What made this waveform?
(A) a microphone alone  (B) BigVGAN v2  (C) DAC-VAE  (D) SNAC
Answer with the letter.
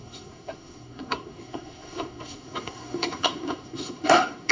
D